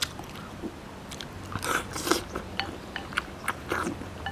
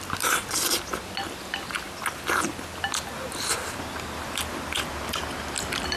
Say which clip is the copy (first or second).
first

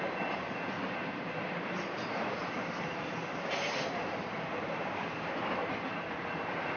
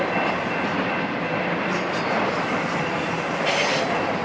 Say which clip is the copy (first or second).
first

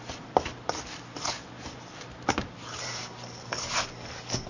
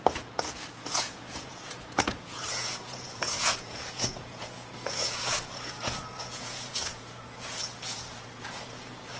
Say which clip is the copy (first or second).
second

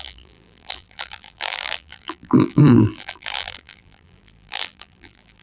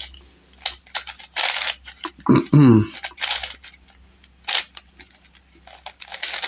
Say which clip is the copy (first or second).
first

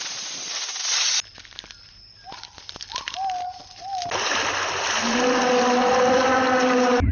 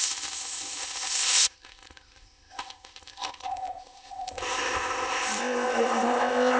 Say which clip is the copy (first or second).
second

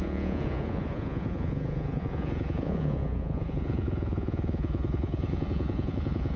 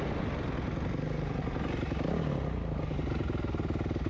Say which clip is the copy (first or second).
first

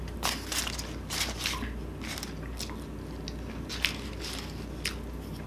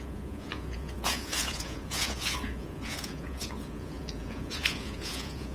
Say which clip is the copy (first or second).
second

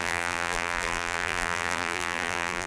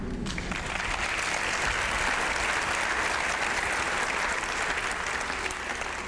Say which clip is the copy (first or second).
first